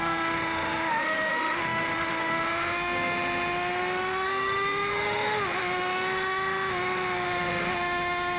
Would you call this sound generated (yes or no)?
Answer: yes